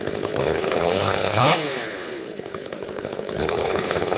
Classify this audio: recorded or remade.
remade